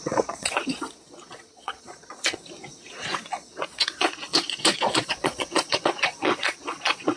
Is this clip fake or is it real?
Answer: fake